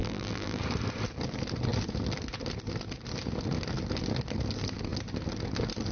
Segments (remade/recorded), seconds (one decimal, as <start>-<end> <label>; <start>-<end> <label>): 0.0-0.6 remade; 0.6-5.9 recorded